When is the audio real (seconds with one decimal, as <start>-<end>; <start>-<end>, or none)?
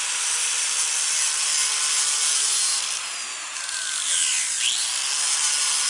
0.0-2.7; 4.6-5.9